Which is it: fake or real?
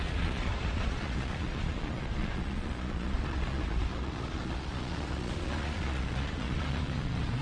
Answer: fake